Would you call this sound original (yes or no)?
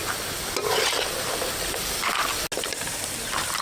yes